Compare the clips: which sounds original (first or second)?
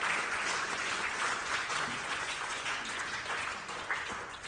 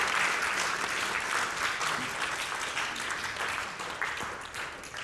second